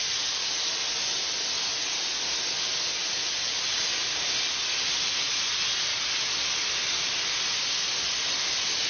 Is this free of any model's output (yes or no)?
yes